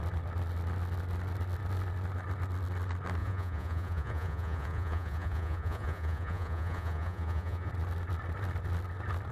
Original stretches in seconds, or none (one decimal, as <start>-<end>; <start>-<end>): 0.0-3.2; 7.7-9.3